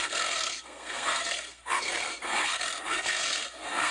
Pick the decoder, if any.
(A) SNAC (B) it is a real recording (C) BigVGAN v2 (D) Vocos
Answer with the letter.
A